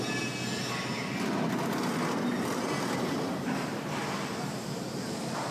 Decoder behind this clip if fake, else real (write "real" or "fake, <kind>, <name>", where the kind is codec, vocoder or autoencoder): real